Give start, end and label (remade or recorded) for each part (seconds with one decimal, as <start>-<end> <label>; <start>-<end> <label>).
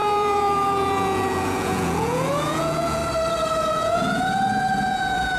0.0-3.0 remade; 3.0-3.7 recorded; 3.7-5.4 remade